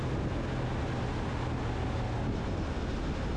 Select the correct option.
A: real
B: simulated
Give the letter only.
A